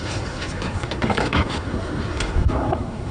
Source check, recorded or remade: remade